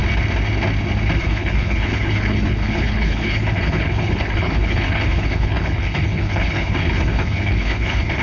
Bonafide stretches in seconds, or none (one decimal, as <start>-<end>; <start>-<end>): 0.0-1.2

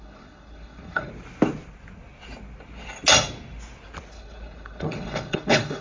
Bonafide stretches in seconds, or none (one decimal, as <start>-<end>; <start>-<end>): 1.1-4.1

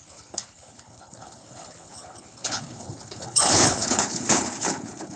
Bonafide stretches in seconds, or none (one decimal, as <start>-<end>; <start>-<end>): none

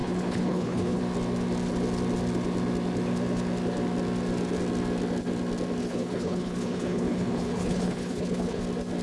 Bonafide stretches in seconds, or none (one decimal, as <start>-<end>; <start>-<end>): 1.0-5.8; 8.6-9.0